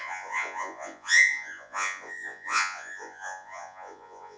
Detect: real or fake fake